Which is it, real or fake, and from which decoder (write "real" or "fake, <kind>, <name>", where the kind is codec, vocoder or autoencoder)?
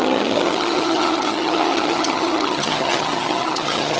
fake, vocoder, HiFi-GAN